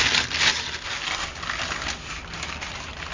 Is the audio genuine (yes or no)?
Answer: yes